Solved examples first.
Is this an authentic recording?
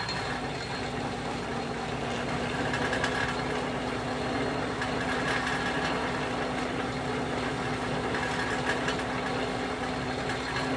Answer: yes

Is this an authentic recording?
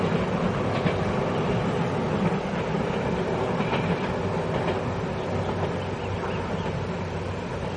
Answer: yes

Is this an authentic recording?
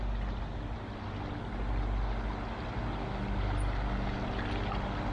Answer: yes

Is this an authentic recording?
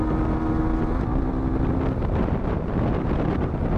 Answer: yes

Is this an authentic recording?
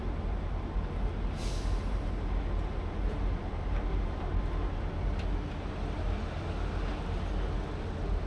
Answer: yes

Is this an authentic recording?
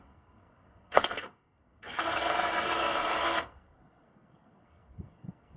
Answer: no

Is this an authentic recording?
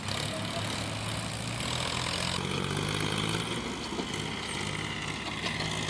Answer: yes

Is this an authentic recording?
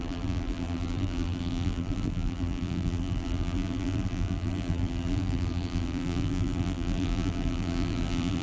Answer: no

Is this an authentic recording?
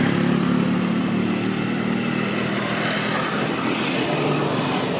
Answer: yes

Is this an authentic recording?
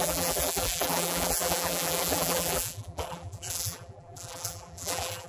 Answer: no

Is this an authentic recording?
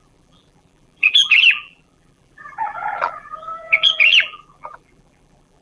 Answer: no